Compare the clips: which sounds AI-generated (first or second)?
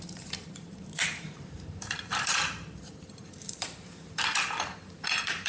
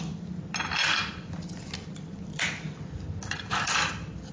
first